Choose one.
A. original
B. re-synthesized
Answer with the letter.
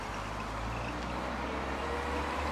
A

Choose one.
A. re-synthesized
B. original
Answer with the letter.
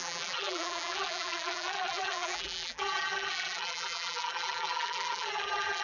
A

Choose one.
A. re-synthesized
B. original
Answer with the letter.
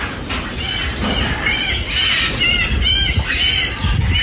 B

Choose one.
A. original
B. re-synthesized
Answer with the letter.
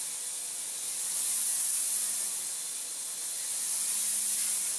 A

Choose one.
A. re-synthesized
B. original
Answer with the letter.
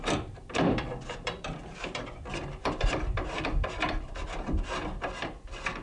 A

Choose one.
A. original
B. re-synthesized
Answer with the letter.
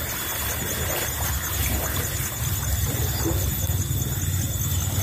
A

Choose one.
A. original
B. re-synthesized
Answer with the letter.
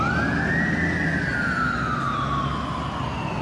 A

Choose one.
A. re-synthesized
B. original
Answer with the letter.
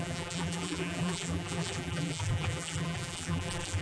A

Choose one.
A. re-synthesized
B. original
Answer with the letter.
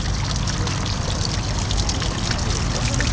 B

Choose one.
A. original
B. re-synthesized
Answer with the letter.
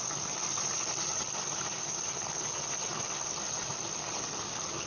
B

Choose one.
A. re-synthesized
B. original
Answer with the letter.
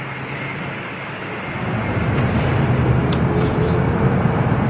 A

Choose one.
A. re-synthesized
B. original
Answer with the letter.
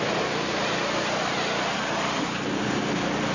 A